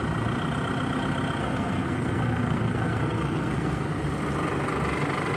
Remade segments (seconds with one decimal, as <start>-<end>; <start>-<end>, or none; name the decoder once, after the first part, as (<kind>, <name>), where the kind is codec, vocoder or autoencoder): 1.4-3.9 (codec, SNAC)